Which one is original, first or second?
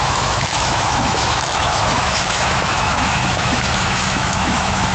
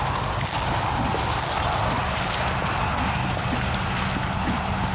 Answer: second